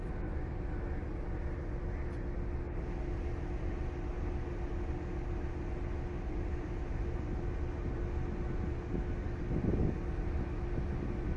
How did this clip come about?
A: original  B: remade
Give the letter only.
A